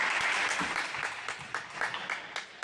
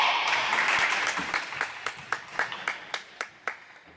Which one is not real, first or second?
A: second